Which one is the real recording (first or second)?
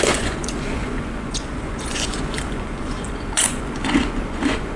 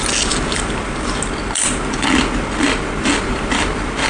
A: second